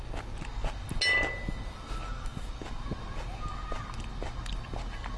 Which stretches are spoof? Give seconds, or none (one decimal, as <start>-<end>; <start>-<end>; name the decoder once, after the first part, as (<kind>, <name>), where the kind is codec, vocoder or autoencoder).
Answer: none